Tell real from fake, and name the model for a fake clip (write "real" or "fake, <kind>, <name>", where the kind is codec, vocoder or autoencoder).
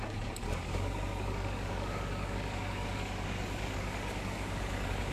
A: fake, codec, DAC